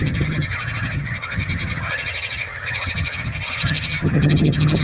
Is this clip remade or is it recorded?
remade